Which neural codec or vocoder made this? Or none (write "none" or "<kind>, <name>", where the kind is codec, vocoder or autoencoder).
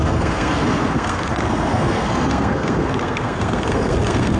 codec, SNAC